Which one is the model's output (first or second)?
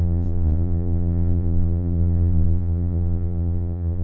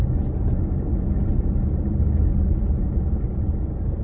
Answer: first